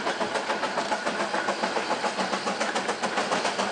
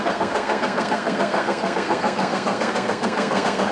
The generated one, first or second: second